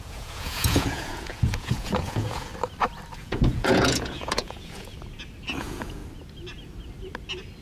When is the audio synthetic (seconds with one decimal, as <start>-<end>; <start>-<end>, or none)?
0.0-2.5; 3.2-4.9; 5.6-6.0